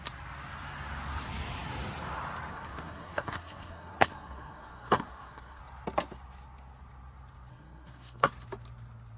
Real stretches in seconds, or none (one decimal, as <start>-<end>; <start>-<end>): 0.0-2.5; 5.6-7.5; 8.3-9.2